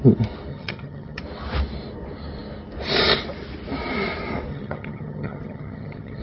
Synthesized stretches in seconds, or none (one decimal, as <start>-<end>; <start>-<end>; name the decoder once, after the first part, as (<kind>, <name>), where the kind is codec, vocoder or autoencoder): 0.5-1.2 (vocoder, HiFi-GAN); 4.5-6.2